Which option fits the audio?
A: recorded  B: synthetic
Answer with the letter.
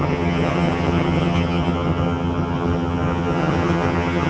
B